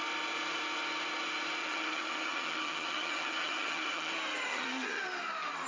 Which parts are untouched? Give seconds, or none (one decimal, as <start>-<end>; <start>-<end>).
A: 0.0-1.6; 4.1-4.5; 5.0-5.7